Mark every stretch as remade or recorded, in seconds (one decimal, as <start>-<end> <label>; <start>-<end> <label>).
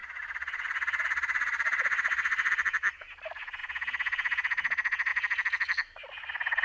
0.0-2.5 remade; 2.5-6.6 recorded